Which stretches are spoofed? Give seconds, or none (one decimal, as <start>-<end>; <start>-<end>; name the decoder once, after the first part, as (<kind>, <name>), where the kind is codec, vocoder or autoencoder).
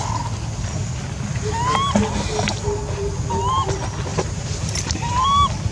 4.1-5.2 (vocoder, BigVGAN v2)